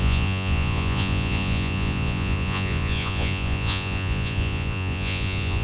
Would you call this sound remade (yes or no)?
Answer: yes